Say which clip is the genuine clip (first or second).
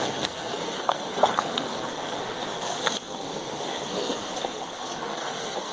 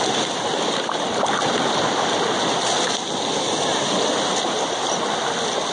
second